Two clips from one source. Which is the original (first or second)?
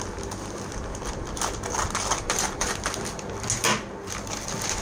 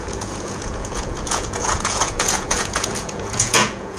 first